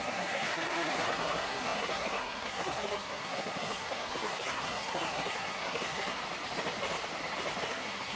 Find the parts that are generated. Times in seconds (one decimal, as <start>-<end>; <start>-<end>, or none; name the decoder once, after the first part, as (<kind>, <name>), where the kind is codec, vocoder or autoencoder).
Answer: 0.0-6.2 (codec, SNAC); 7.7-8.2